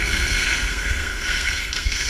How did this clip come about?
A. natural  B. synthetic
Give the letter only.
B